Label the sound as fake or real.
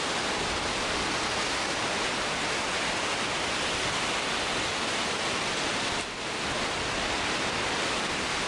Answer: real